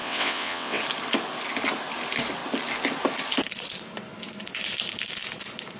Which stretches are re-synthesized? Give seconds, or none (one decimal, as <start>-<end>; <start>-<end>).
0.0-0.8